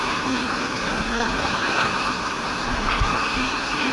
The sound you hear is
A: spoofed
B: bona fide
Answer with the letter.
A